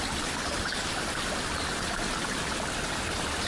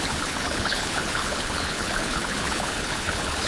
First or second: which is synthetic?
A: second